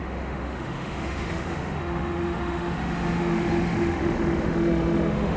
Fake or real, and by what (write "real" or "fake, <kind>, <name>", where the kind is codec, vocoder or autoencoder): fake, autoencoder, DAC-VAE